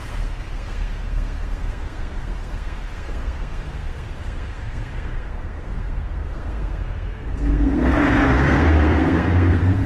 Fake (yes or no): yes